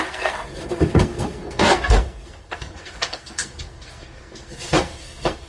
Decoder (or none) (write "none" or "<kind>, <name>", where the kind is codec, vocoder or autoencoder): codec, SNAC